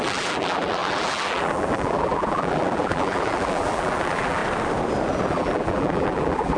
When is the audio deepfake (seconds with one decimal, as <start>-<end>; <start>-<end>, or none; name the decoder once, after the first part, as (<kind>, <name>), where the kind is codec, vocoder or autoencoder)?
0.0-4.4 (vocoder, BigVGAN v2); 5.3-6.6